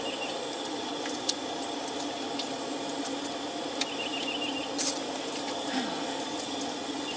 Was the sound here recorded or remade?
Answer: recorded